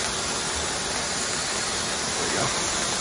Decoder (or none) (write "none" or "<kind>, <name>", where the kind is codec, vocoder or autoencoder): none